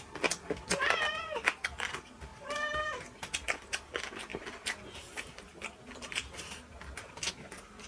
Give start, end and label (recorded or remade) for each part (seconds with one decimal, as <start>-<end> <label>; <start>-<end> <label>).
0.0-7.9 recorded